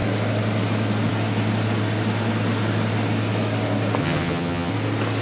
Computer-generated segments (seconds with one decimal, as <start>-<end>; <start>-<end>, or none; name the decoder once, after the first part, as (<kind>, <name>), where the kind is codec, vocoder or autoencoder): 4.0-4.7 (vocoder, HiFi-GAN)